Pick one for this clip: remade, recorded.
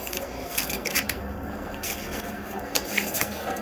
remade